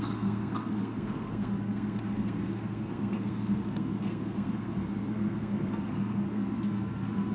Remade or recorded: remade